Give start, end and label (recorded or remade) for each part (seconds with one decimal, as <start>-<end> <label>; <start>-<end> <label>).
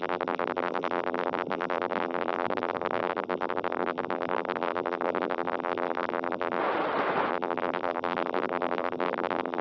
0.0-6.6 remade; 6.6-7.3 recorded; 7.3-9.6 remade